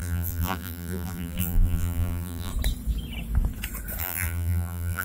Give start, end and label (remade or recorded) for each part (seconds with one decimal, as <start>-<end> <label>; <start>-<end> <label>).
0.0-2.5 remade; 2.5-4.0 recorded; 4.0-5.0 remade